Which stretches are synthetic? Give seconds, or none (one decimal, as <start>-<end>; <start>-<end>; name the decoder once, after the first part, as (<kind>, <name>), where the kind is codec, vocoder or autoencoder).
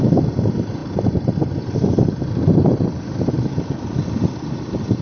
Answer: none